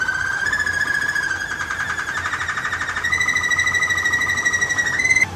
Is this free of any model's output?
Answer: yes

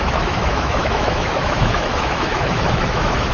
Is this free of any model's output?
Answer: no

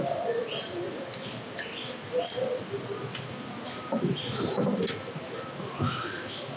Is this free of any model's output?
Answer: yes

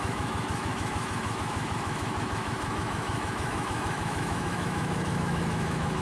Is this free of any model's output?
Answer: no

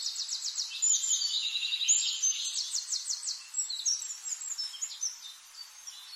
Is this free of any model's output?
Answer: yes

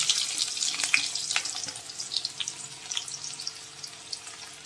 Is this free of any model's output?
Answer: yes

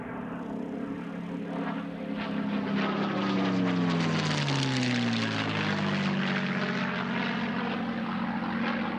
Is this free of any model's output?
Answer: yes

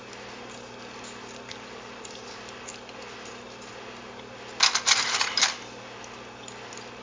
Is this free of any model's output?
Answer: yes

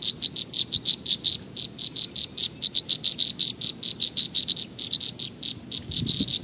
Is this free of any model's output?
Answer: yes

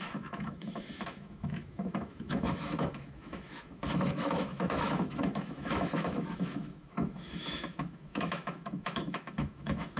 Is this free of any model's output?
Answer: no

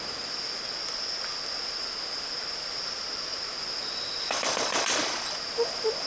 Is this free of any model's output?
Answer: yes